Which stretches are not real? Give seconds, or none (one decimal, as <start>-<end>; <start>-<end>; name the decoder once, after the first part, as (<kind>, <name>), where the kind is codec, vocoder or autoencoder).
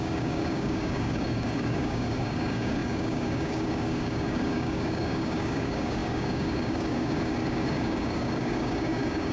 0.0-9.3 (codec, DAC)